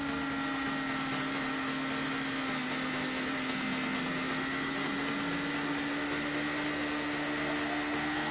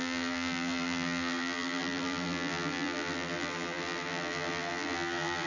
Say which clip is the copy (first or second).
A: second